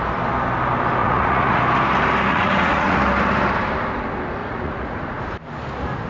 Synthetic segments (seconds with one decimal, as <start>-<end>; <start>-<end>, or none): 1.0-1.6; 2.3-3.0; 4.4-5.2